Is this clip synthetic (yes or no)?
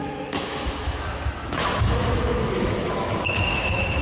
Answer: yes